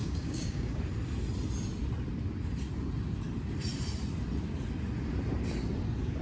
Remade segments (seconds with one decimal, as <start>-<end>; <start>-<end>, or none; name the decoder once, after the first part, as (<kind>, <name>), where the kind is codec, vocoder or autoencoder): 0.0-0.8 (codec, DAC)